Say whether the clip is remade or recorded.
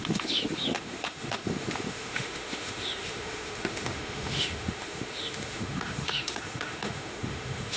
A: remade